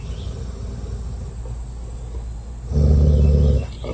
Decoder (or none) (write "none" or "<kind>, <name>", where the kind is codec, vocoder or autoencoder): none